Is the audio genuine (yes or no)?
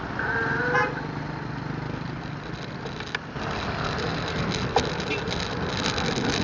yes